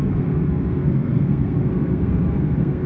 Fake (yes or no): yes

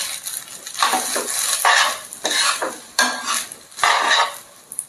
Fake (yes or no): no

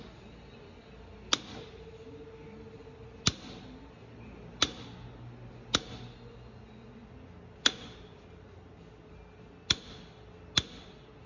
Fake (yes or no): no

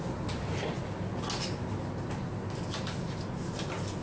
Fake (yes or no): no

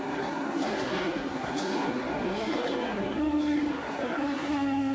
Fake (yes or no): yes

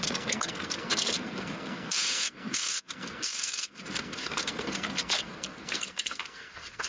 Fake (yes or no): yes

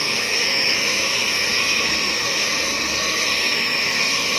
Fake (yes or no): yes